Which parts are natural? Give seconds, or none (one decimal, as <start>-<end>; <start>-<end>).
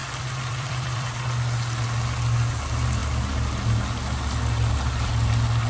1.2-5.7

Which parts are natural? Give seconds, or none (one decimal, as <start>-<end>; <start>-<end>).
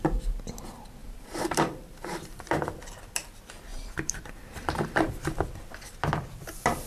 0.0-1.0; 2.8-3.7; 5.5-6.9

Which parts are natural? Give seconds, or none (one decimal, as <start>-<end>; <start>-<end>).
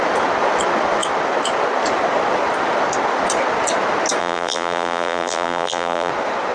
0.0-4.2; 6.1-6.5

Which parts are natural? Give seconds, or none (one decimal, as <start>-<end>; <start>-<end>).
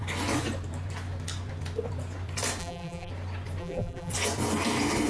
0.0-2.6; 3.1-3.6; 4.1-5.1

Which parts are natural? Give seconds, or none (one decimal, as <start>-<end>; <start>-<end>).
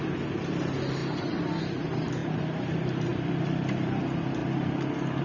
0.0-1.0; 1.6-2.2; 4.0-5.2